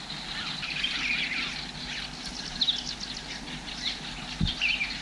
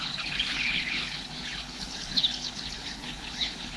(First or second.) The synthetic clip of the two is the second